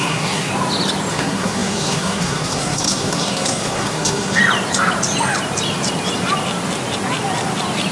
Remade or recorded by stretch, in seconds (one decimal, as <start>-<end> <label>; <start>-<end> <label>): 0.0-0.5 remade; 0.5-1.1 recorded; 1.1-4.4 remade; 4.4-7.9 recorded

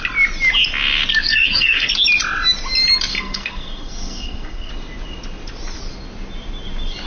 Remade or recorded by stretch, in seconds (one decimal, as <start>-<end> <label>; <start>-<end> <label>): 0.0-1.3 recorded; 1.3-1.9 remade; 1.9-3.1 recorded; 3.1-4.7 remade; 4.7-7.1 recorded

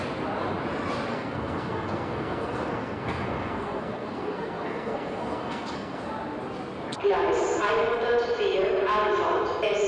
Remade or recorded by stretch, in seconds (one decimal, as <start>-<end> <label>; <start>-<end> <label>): 0.0-1.1 recorded; 1.1-6.0 remade; 6.0-9.9 recorded

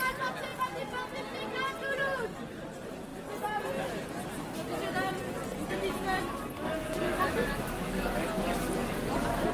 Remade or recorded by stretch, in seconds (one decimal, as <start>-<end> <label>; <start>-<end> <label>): 0.0-9.5 recorded

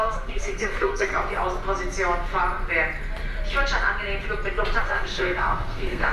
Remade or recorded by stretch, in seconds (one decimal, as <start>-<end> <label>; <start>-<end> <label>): 0.0-1.1 remade; 1.1-4.8 recorded; 4.8-6.1 remade

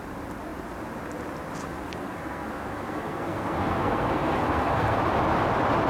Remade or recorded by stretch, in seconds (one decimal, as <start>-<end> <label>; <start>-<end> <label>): 0.0-1.6 recorded; 1.6-5.0 remade; 5.0-5.9 recorded

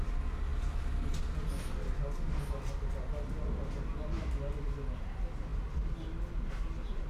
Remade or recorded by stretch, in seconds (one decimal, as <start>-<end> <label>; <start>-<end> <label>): 0.0-7.1 recorded